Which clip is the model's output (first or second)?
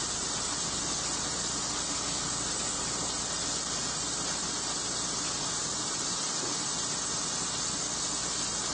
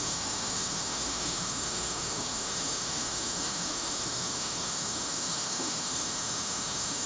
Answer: second